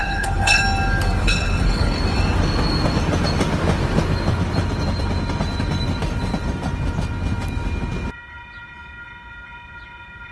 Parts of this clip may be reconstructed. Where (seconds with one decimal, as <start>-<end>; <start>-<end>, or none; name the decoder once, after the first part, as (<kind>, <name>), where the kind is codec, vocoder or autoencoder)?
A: 0.0-0.6 (codec, HILCodec); 1.2-2.0